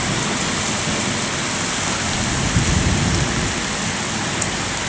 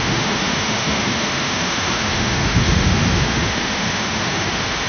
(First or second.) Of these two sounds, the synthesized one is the second